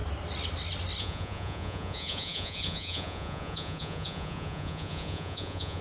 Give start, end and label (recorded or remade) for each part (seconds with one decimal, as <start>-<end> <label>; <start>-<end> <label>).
0.0-1.0 recorded; 1.0-5.8 remade

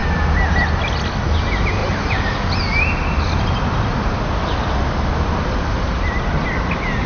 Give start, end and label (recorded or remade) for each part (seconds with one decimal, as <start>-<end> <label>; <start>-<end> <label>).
0.0-7.1 recorded

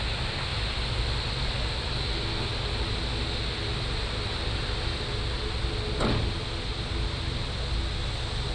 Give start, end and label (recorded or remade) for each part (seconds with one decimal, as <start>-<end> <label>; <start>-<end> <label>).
0.0-8.5 recorded

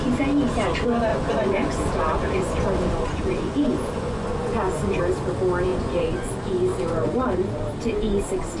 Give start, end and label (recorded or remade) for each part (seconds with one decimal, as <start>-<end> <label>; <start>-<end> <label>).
0.0-1.1 recorded; 1.1-5.0 remade; 5.0-5.7 recorded; 5.7-6.3 remade; 6.3-6.7 recorded; 6.7-7.6 remade; 7.6-8.6 recorded

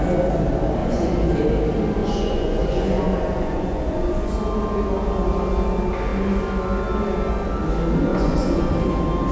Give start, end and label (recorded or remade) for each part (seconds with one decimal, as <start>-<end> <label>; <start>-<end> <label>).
0.0-0.8 recorded; 0.8-1.4 remade; 1.4-2.0 recorded; 2.0-4.3 remade; 4.3-8.1 recorded; 8.1-8.7 remade; 8.7-9.3 recorded